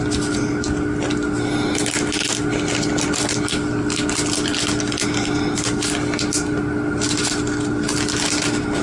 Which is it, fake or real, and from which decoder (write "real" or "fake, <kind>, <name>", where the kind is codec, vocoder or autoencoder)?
real